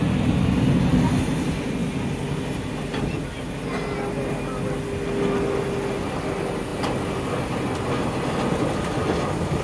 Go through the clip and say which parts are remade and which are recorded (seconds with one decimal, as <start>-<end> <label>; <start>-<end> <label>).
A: 0.0-9.6 recorded